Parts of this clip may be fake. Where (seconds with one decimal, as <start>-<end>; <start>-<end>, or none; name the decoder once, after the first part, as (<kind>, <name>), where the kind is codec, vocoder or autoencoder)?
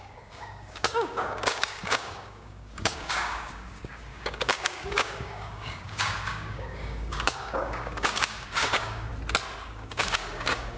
0.0-9.1 (codec, DAC); 9.6-10.8